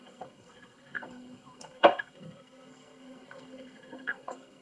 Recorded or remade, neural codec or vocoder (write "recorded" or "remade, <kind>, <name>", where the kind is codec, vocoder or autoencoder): remade, codec, SNAC